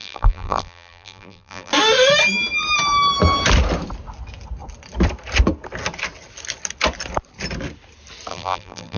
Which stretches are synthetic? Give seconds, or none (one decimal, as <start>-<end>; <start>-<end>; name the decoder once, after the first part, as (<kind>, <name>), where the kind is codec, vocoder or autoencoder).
0.0-1.7 (vocoder, BigVGAN v2); 8.3-9.0